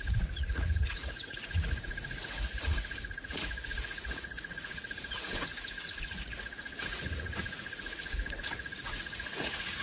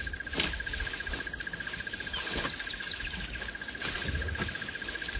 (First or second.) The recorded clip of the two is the second